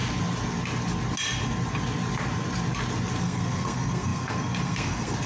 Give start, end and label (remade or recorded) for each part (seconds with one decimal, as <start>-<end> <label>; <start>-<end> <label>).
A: 0.0-3.2 recorded; 3.2-5.3 remade